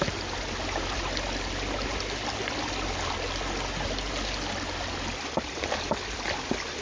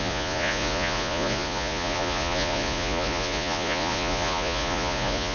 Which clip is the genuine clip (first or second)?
first